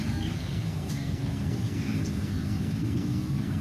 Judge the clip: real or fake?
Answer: fake